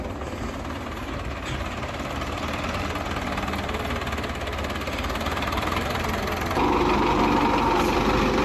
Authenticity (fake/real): real